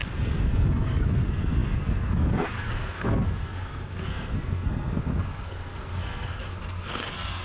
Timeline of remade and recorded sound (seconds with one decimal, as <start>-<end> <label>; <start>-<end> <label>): 0.0-7.4 remade